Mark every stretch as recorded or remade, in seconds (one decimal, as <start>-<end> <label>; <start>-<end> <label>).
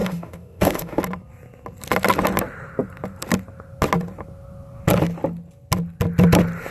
0.0-1.0 remade; 1.0-6.7 recorded